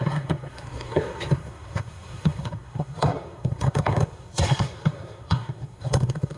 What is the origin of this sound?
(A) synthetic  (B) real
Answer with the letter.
A